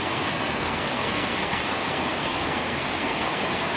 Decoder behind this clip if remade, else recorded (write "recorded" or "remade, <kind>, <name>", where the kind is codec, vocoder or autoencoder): remade, codec, SNAC